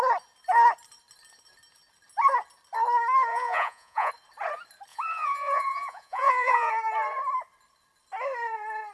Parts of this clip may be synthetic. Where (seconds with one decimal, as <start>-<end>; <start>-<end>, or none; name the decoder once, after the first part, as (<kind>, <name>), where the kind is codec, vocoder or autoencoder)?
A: 3.3-4.1 (vocoder, Vocos); 4.9-6.7